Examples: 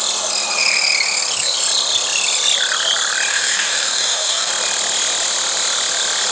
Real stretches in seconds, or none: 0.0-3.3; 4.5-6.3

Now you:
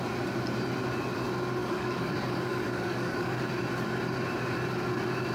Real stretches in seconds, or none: 0.0-1.6; 3.5-5.3

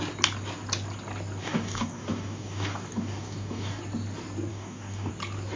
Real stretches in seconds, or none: 0.0-1.4; 3.8-4.5; 5.1-5.6

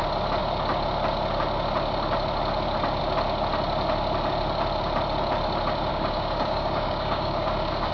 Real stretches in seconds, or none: 0.0-5.9

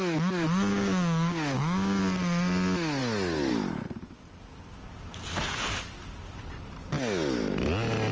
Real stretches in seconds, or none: 0.0-0.7; 2.0-8.1

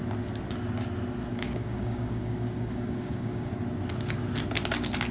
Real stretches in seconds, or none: 0.0-1.3; 3.5-5.1

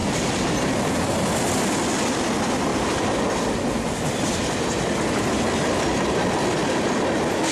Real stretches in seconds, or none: 0.0-7.5